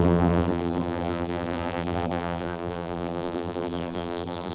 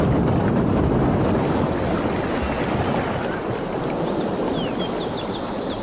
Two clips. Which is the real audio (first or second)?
second